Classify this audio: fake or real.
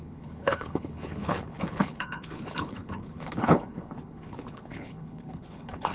fake